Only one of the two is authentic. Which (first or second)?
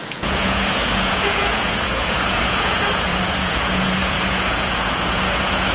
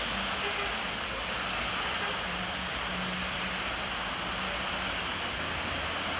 second